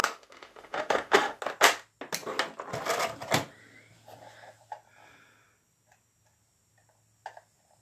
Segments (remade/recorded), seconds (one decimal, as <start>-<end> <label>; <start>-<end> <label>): 0.0-1.4 remade; 1.4-7.8 recorded